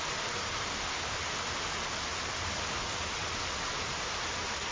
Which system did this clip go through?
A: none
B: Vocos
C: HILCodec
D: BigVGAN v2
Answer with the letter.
A